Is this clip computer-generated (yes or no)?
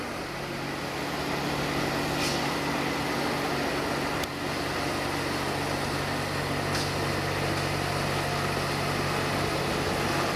no